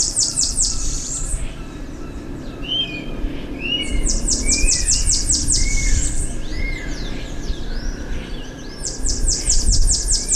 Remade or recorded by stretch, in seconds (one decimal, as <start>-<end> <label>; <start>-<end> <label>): 0.0-6.5 remade; 6.5-7.5 recorded; 7.5-9.7 remade; 9.7-10.4 recorded